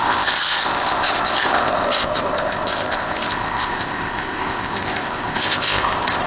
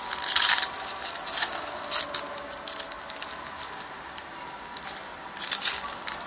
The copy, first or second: first